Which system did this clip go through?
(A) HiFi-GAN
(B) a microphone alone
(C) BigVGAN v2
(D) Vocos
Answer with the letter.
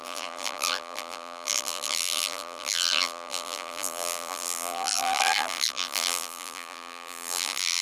C